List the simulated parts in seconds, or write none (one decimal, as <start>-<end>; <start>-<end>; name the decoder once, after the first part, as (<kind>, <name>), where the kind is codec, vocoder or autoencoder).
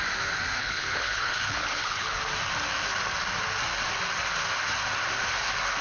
0.6-2.2 (codec, HILCodec)